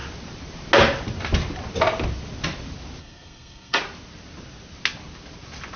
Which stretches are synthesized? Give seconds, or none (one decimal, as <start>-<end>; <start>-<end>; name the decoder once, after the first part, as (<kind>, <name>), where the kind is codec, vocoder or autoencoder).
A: 3.0-3.8 (codec, SNAC)